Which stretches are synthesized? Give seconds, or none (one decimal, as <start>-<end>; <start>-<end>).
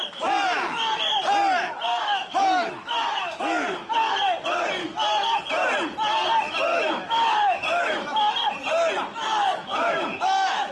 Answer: 1.9-3.9; 4.8-5.4; 6.7-8.3; 9.1-10.7